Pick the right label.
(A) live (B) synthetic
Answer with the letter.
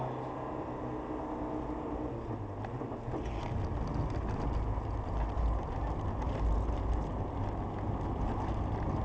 A